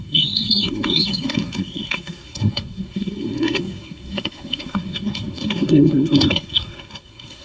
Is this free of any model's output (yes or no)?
no